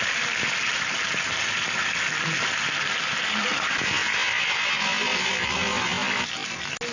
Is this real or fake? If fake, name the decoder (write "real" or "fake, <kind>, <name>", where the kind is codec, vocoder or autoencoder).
real